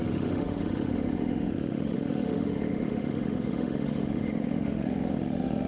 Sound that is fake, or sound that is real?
fake